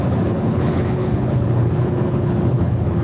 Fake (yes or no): yes